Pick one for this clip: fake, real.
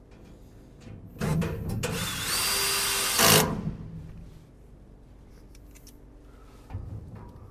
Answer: real